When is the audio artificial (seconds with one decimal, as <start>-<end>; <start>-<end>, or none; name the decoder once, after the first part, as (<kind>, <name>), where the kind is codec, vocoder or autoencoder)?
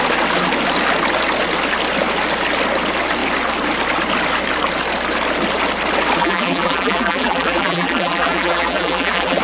6.2-9.4 (vocoder, BigVGAN v2)